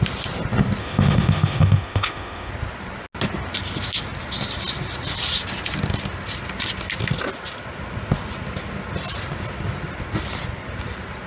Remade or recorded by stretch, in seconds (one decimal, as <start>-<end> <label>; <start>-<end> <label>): 0.0-0.8 recorded; 0.8-2.5 remade; 2.5-11.3 recorded